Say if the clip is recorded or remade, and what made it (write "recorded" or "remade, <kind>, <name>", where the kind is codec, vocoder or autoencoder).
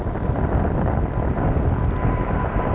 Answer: recorded